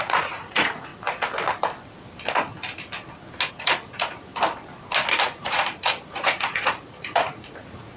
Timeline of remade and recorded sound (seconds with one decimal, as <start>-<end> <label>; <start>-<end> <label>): 0.0-0.9 remade; 0.9-3.5 recorded; 3.5-4.3 remade; 4.3-5.2 recorded; 5.2-8.0 remade